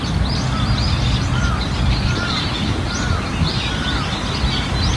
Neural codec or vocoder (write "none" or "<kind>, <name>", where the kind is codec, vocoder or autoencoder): none